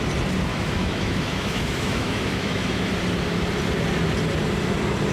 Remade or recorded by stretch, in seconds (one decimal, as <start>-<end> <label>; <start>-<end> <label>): 0.0-0.5 recorded; 0.5-2.9 remade; 2.9-5.1 recorded

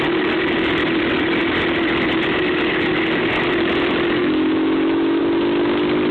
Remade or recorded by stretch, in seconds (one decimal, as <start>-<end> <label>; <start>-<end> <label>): 0.0-4.2 recorded; 4.2-5.2 remade; 5.2-6.1 recorded

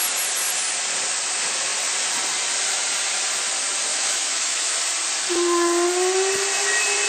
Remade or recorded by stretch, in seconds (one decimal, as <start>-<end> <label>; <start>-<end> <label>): 0.0-3.9 recorded; 3.9-4.8 remade; 4.8-7.1 recorded